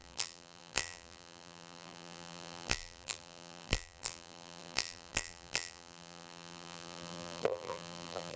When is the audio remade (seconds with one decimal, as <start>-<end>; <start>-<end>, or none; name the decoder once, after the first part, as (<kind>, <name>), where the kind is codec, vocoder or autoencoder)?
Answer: 0.0-8.4 (vocoder, BigVGAN v2)